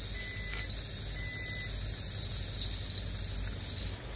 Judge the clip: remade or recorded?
recorded